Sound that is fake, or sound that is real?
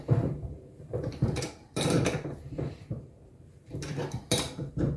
fake